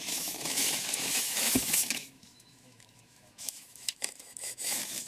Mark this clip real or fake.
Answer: fake